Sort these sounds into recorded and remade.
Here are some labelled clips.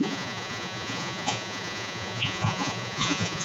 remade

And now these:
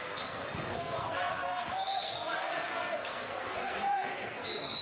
remade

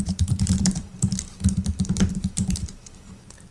remade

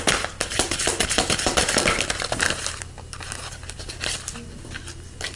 recorded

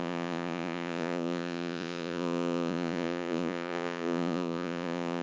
remade